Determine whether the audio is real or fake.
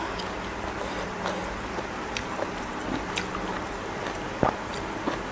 real